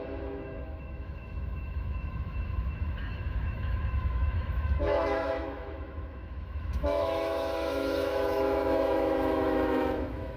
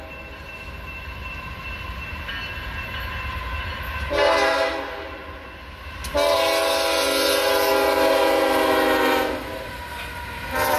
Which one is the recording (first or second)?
second